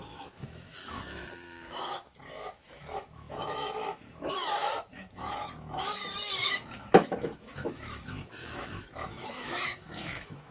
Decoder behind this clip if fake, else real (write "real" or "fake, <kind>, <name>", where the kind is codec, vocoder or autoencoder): fake, autoencoder, DAC-VAE